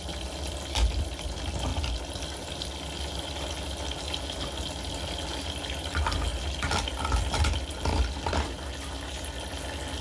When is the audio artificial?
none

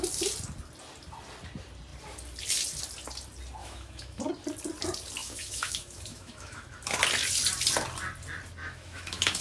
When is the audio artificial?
3.6-4.2 (autoencoder, DAC-VAE); 5.2-7.0; 8.6-9.4

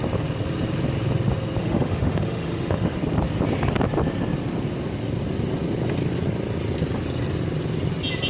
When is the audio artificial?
1.6-3.0 (autoencoder, DAC-VAE)

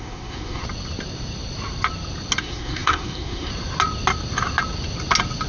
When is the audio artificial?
0.0-0.6 (codec, SNAC); 2.4-3.5

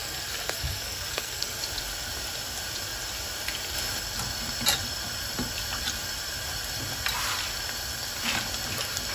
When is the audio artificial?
0.0-1.6 (codec, SNAC)

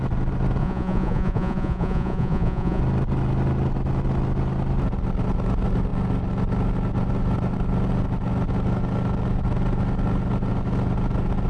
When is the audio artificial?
0.6-2.8 (vocoder, Vocos)

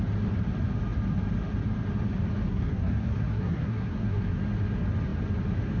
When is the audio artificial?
2.5-4.4 (codec, SNAC)